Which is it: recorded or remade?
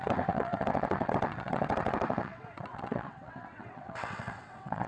remade